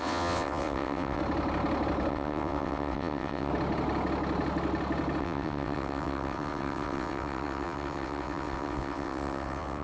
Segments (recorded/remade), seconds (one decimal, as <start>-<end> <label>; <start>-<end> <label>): 0.0-1.2 remade; 1.2-2.1 recorded; 2.1-3.5 remade; 3.5-5.2 recorded; 5.2-9.8 remade